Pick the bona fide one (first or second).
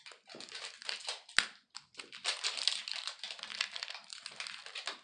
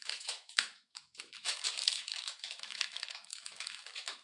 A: first